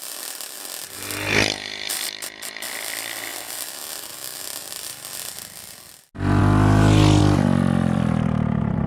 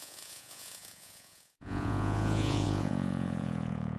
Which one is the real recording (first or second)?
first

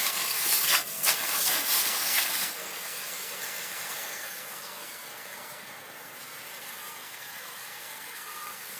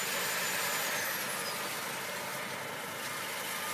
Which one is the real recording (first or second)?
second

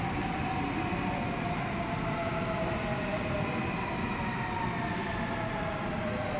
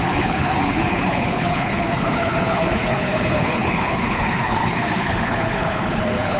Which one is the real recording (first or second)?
first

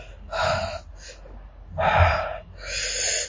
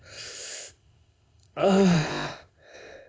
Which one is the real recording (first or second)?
first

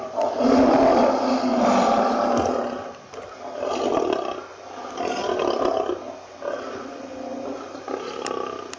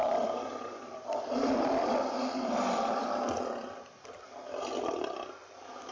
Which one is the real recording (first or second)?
first